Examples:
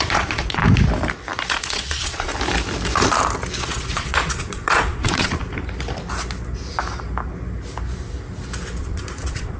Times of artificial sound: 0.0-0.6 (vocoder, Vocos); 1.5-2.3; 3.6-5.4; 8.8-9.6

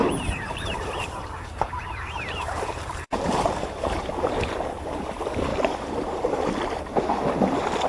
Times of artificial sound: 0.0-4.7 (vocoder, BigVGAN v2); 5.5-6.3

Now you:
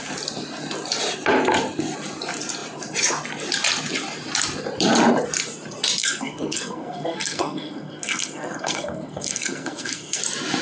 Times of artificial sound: 6.0-10.2 (codec, SNAC)

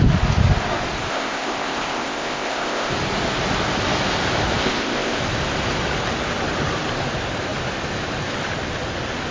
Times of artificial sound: 1.1-2.9 (codec, ZipCodec); 4.6-5.2

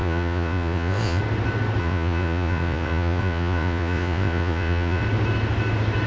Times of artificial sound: 0.0-1.2 (vocoder, Vocos); 1.8-5.0

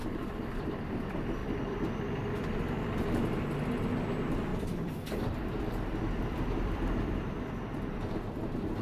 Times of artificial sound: 0.0-1.0 (vocoder, BigVGAN v2); 1.4-2.2; 4.5-8.4

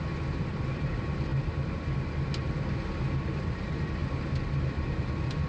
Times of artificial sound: 0.0-1.3 (vocoder, BigVGAN v2); 3.4-4.0; 4.6-5.5